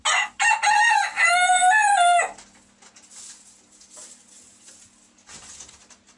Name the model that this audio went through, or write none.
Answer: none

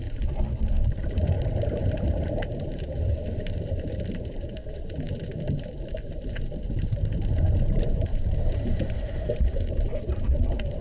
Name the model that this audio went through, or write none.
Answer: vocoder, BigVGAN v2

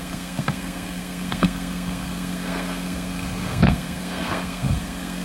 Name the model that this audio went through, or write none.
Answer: codec, SNAC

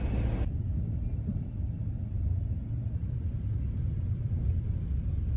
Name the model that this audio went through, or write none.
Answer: none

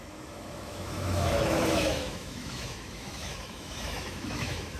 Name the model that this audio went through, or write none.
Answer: autoencoder, DAC-VAE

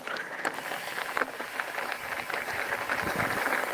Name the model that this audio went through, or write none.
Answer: none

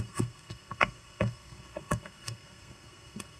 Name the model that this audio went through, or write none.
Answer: codec, SNAC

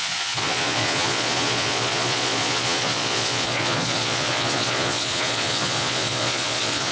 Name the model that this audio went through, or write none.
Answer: vocoder, Vocos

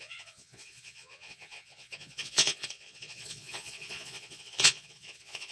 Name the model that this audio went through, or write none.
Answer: vocoder, Vocos